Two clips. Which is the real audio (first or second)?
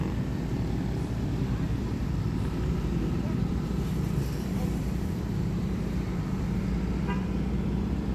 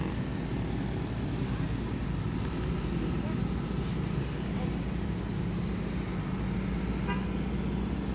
second